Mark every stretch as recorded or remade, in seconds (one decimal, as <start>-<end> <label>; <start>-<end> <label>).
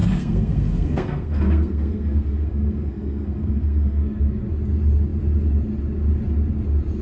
0.0-4.2 remade; 4.2-7.0 recorded